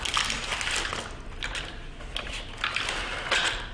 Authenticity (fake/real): real